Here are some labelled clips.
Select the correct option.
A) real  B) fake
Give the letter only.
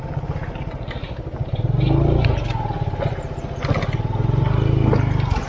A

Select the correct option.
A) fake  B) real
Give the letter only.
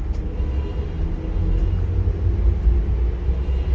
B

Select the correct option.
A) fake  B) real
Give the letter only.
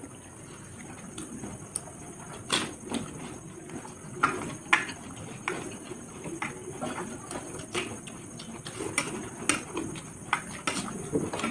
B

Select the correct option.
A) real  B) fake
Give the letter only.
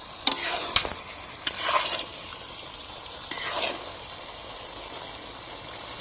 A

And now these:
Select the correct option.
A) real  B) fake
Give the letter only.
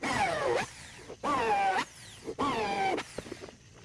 A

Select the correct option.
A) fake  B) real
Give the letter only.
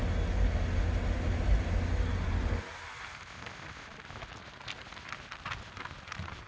B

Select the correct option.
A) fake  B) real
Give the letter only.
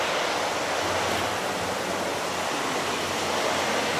B